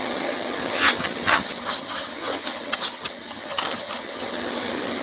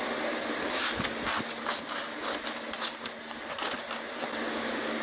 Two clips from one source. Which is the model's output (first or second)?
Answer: first